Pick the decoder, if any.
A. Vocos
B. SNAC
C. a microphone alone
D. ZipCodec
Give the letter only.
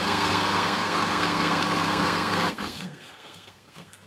B